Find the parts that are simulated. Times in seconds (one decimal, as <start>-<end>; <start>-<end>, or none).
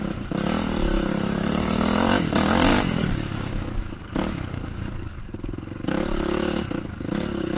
1.1-1.8; 2.7-5.2